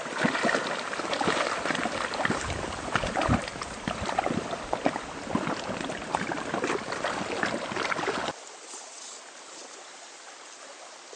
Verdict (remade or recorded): recorded